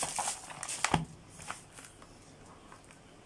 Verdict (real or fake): real